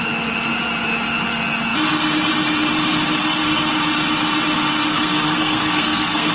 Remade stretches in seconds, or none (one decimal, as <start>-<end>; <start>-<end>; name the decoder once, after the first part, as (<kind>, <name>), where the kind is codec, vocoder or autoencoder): 4.9-6.3 (codec, SNAC)